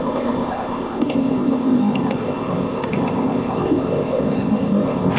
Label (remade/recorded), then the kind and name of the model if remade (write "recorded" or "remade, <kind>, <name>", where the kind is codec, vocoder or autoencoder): remade, codec, ZipCodec